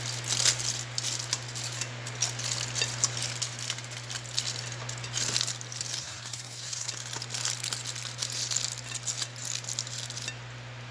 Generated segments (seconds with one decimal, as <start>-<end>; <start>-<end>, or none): 6.0-6.9